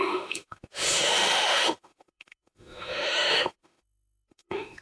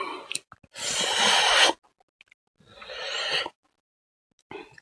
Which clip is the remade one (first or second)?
first